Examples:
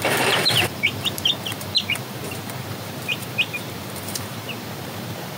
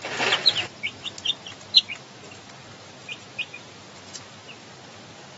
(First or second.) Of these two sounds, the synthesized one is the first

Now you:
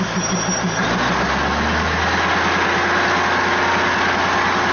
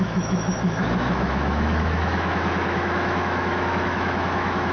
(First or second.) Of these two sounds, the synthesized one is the second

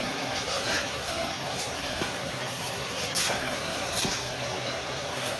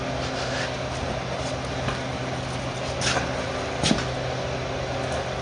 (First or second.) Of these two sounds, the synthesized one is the first